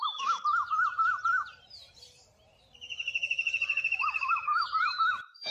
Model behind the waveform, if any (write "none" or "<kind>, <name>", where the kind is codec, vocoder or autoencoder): vocoder, BigVGAN v2